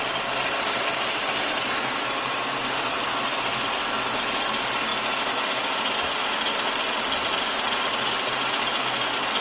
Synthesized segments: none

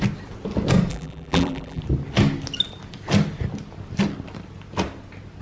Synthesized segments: 0.9-1.8 (vocoder, BigVGAN v2)

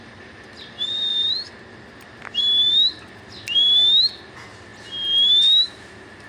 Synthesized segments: none

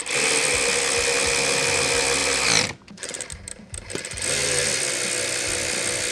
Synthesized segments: 2.2-4.9 (vocoder, BigVGAN v2)

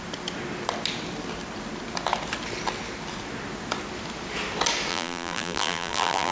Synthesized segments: 4.9-6.3 (vocoder, BigVGAN v2)

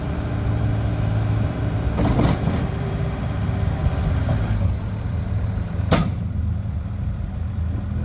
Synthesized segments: 0.0-3.8 (vocoder, BigVGAN v2); 5.0-8.0

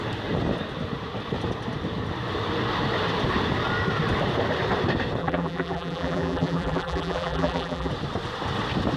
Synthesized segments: 5.2-7.9 (vocoder, BigVGAN v2)